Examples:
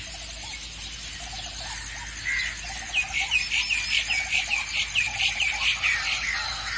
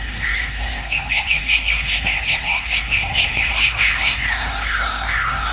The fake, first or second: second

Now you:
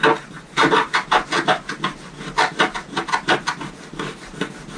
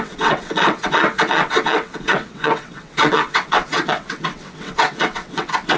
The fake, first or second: second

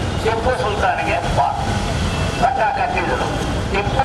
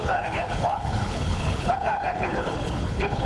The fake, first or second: second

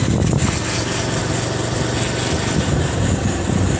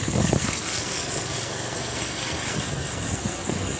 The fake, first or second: second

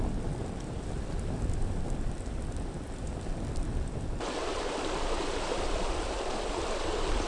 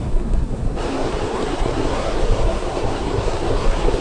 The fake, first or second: second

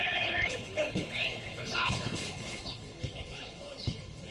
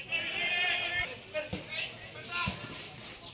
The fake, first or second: first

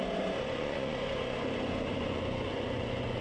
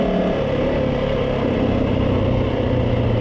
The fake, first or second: first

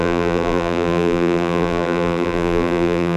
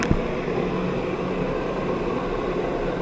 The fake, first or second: first